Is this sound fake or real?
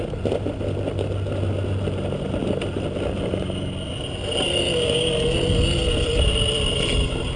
real